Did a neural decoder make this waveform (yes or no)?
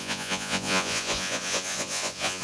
yes